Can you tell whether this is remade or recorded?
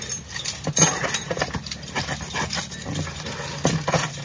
recorded